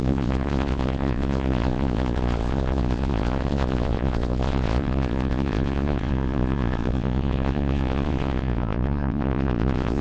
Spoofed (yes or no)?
yes